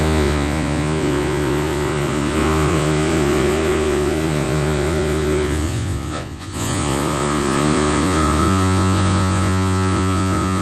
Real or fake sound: fake